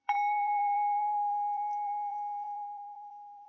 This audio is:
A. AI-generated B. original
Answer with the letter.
A